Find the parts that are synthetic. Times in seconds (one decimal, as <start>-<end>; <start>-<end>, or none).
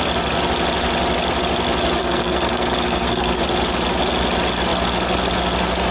2.0-3.4